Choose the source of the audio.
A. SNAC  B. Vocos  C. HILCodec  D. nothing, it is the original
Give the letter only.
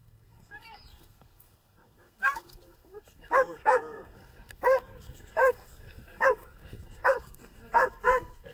A